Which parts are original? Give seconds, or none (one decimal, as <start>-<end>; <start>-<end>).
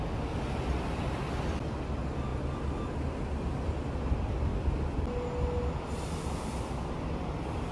0.0-7.7